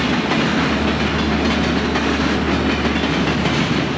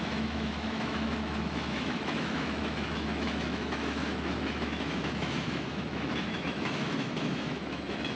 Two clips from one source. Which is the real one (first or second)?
first